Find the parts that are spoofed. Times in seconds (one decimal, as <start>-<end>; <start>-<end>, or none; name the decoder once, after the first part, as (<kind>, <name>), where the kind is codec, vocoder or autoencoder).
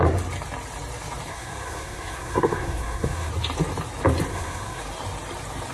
1.3-3.3 (codec, SNAC); 4.3-4.8